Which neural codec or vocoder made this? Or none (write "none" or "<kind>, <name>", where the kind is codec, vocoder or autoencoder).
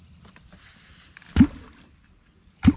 none